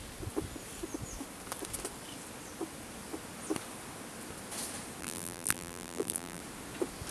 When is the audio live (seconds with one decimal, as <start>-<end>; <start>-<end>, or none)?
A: 0.0-5.0; 6.4-7.1